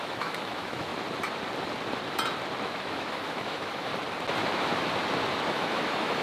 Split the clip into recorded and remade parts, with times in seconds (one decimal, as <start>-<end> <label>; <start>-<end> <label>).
0.0-0.9 remade; 0.9-2.6 recorded; 2.6-3.9 remade; 3.9-5.5 recorded; 5.5-6.2 remade